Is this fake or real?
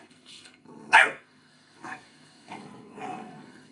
fake